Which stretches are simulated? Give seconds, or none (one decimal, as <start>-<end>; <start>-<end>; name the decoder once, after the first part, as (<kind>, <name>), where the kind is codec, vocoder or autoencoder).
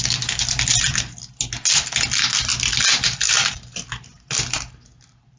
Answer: none